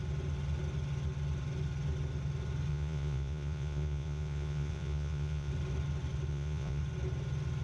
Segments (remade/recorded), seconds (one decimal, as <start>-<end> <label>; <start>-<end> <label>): 0.0-2.7 recorded; 2.7-5.5 remade; 5.5-6.3 recorded; 6.3-6.8 remade; 6.8-7.6 recorded